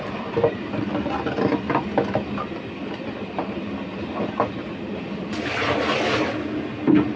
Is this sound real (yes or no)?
yes